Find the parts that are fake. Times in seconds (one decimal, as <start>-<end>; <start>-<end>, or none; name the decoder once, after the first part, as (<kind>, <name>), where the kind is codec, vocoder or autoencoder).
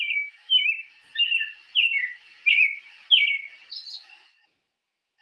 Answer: 0.0-0.8 (autoencoder, DAC-VAE); 3.9-5.2